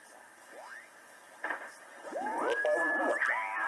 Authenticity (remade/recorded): recorded